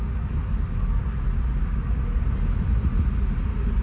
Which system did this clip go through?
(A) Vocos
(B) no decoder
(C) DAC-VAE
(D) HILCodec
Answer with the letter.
B